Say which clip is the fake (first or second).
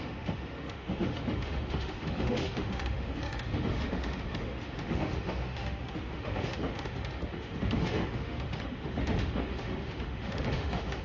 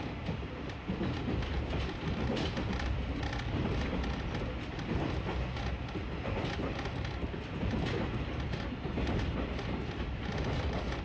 first